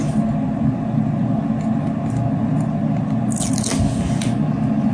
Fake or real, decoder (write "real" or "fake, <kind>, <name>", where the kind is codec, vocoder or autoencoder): real